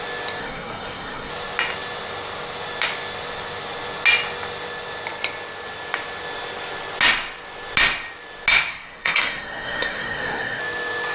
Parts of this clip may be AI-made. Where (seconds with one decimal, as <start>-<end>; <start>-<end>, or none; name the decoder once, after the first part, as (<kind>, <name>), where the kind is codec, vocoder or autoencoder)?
0.4-1.3 (codec, SNAC); 8.7-10.6